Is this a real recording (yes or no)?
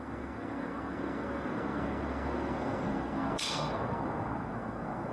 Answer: no